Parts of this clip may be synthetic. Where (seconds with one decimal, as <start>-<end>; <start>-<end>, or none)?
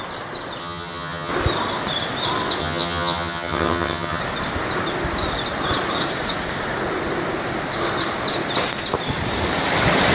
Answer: 0.6-1.3; 2.6-4.2